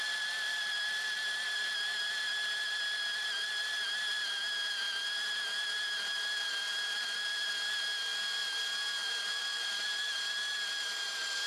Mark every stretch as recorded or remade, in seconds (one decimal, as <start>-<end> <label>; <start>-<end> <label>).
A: 0.0-4.1 recorded; 4.1-7.5 remade; 7.5-9.0 recorded; 9.0-11.1 remade; 11.1-11.5 recorded